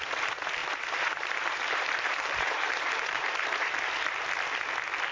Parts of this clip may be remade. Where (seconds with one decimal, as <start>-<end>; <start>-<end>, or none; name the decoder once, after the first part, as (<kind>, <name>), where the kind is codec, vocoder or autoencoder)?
0.6-3.7 (vocoder, BigVGAN v2)